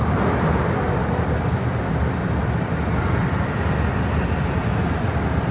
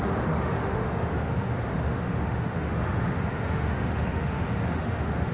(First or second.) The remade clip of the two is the second